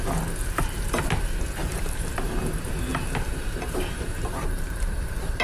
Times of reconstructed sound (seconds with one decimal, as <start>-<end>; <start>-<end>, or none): 1.6-2.4; 2.9-5.4